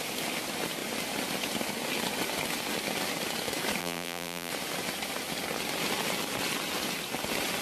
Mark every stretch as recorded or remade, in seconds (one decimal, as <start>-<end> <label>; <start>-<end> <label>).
0.0-3.8 recorded; 3.8-4.5 remade; 4.5-7.6 recorded